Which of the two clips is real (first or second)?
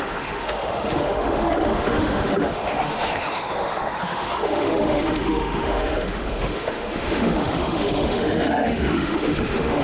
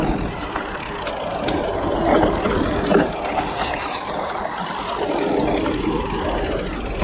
second